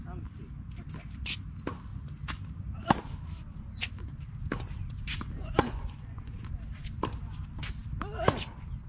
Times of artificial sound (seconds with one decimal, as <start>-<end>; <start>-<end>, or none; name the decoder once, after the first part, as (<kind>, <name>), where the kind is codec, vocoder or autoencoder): 5.4-6.4 (vocoder, Vocos)